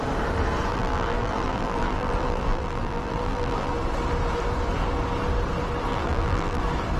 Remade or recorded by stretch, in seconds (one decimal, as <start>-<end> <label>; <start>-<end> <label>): 0.0-0.7 recorded; 0.7-3.7 remade; 3.7-5.9 recorded; 5.9-6.6 remade; 6.6-7.0 recorded